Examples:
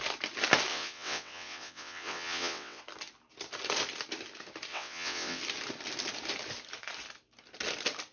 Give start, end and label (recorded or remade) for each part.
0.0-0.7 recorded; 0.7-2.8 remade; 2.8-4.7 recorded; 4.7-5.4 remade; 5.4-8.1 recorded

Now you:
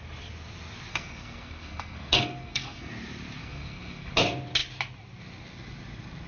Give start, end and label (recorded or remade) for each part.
0.0-0.9 recorded; 0.9-2.9 remade; 2.9-3.4 recorded; 3.4-4.1 remade; 4.1-6.3 recorded

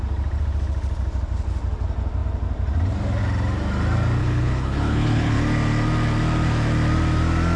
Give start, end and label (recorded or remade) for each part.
0.0-4.2 recorded; 4.2-5.4 remade; 5.4-7.6 recorded

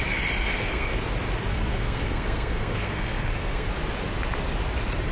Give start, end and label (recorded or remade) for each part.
0.0-0.5 recorded; 0.5-1.0 remade; 1.0-1.5 recorded; 1.5-3.7 remade; 3.7-5.1 recorded

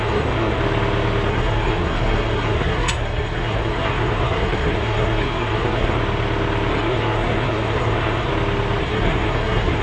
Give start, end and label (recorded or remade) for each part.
0.0-0.6 remade; 0.6-1.3 recorded; 1.3-6.0 remade; 6.0-6.7 recorded; 6.7-8.3 remade; 8.3-8.8 recorded; 8.8-9.8 remade

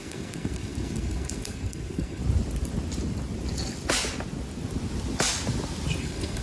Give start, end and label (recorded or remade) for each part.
0.0-2.2 remade; 2.2-6.0 recorded; 6.0-6.4 remade

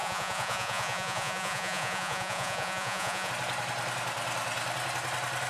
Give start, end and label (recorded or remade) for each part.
0.0-3.3 remade; 3.3-5.5 recorded

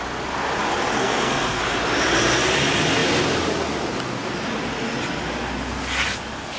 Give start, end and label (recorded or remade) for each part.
0.0-1.0 recorded; 1.0-1.6 remade; 1.6-6.6 recorded